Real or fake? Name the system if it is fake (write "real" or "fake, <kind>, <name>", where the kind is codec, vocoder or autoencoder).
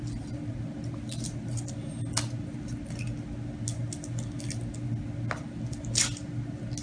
real